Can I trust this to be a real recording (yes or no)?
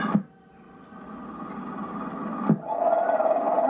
yes